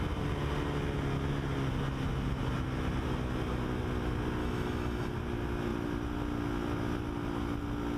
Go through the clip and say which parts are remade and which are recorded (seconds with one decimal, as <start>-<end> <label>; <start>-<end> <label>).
0.0-4.4 recorded; 4.4-5.1 remade; 5.1-8.0 recorded

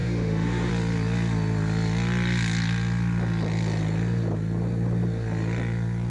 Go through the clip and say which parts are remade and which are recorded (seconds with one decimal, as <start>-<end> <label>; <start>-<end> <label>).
0.0-0.7 remade; 0.7-6.1 recorded